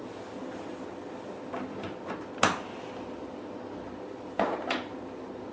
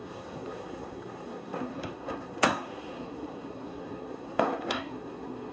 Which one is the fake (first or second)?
second